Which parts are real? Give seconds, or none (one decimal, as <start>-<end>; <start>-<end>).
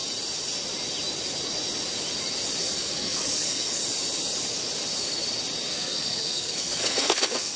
0.0-2.6; 3.8-5.7